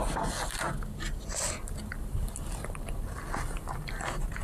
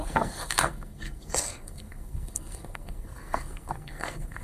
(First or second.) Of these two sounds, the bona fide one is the first